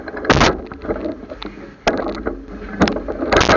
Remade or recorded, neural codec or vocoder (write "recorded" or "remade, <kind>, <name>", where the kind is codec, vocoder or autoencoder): recorded